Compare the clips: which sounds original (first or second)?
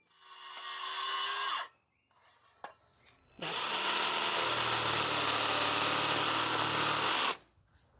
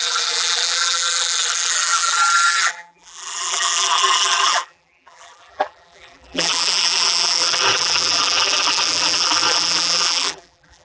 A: first